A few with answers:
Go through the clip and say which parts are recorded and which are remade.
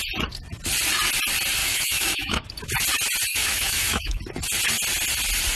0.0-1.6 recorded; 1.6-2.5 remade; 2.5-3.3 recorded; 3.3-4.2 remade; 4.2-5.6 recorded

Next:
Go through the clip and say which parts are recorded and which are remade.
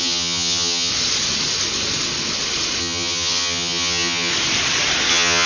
0.0-0.9 remade; 0.9-2.8 recorded; 2.8-4.3 remade; 4.3-5.1 recorded; 5.1-5.5 remade